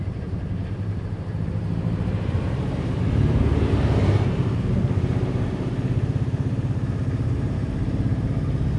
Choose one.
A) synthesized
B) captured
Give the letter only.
A